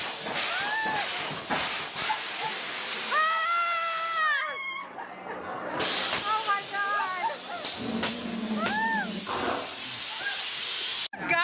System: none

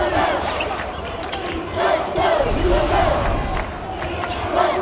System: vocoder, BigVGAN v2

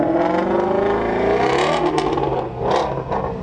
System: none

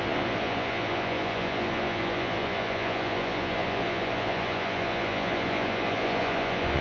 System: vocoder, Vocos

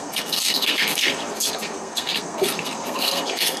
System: codec, SNAC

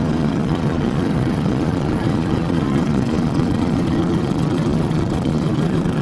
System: vocoder, Vocos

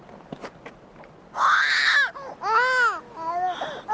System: none